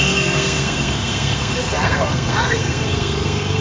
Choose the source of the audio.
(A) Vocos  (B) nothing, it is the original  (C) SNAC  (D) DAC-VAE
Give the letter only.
C